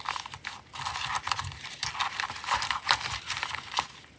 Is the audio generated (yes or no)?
no